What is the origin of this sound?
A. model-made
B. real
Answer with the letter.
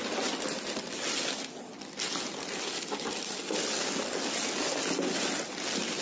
B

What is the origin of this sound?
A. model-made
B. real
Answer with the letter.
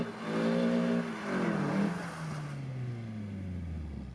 B